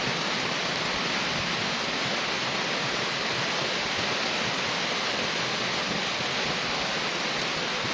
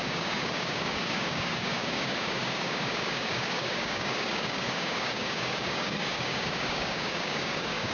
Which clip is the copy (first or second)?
second